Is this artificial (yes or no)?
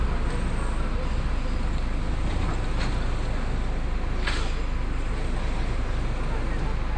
no